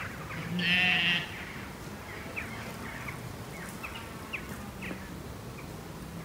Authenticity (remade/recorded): recorded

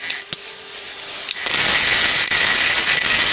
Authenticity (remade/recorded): recorded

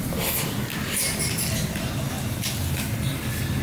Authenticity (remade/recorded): recorded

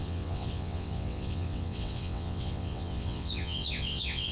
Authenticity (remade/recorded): remade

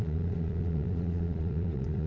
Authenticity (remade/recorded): remade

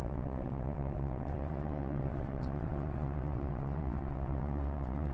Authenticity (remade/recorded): remade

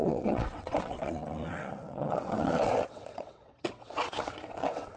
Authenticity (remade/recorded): remade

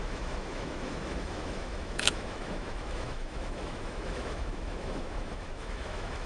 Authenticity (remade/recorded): remade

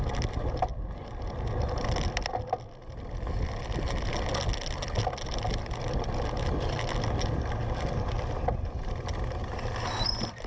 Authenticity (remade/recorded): recorded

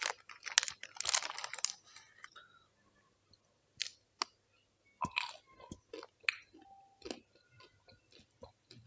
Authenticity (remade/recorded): recorded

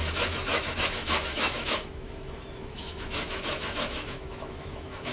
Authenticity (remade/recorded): remade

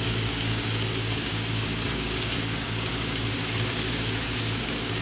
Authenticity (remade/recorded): remade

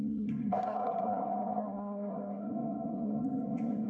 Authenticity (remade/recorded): remade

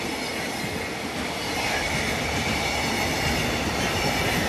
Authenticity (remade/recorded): recorded